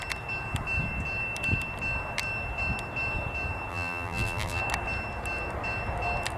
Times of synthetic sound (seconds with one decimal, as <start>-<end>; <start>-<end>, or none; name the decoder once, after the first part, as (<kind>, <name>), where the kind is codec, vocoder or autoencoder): 3.7-4.6 (vocoder, BigVGAN v2)